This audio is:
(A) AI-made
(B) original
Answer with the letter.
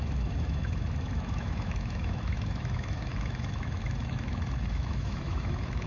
A